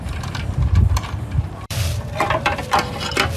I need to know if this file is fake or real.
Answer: fake